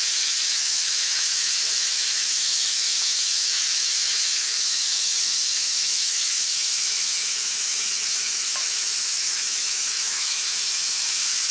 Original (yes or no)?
no